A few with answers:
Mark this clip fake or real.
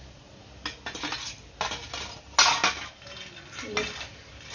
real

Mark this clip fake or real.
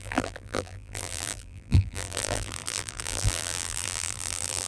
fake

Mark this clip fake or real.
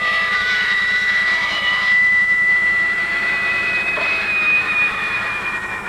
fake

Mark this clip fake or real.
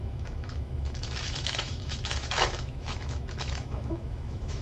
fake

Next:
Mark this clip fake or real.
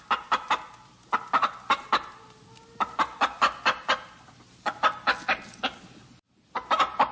real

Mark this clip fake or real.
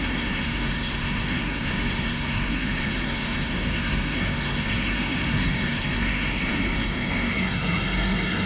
fake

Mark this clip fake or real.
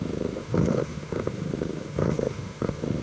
fake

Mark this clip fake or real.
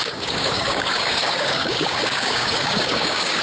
fake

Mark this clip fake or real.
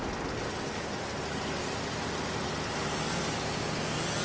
real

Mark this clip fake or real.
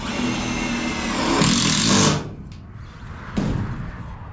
real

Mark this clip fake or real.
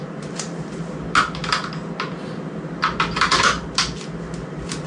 real